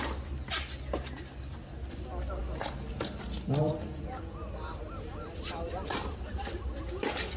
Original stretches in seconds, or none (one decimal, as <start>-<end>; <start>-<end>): 0.0-7.4